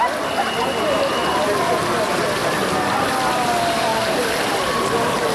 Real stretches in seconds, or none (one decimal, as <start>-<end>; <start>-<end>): 0.0-5.3